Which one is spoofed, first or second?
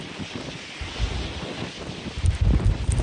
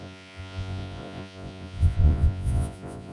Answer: second